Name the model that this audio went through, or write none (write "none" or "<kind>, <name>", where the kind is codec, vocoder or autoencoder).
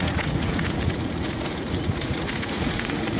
vocoder, Vocos